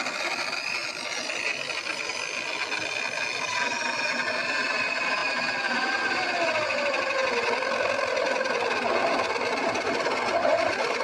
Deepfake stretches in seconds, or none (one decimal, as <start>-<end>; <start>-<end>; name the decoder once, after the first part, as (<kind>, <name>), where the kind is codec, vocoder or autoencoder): none